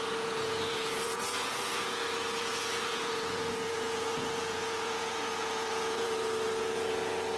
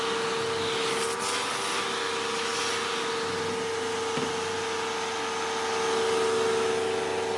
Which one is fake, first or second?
first